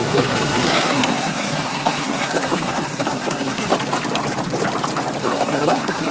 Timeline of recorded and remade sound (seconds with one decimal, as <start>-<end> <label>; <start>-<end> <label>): 0.0-3.7 remade; 3.7-5.2 recorded; 5.2-6.1 remade